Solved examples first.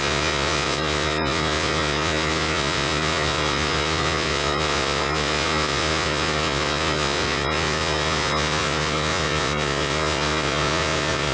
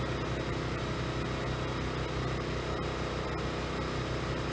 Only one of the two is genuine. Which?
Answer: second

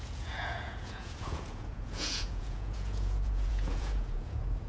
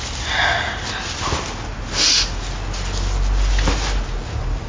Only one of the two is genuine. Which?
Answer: second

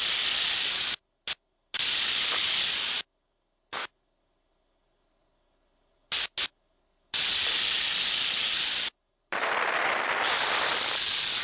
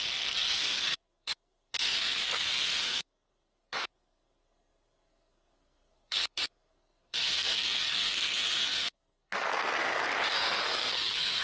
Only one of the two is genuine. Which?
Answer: first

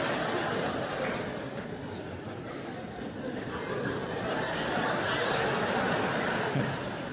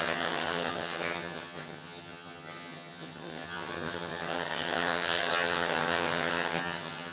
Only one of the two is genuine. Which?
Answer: first